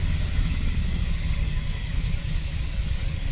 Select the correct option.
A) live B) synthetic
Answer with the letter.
B